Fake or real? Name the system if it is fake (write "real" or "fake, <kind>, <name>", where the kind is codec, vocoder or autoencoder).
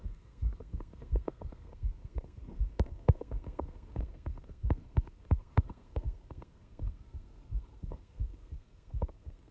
fake, codec, SNAC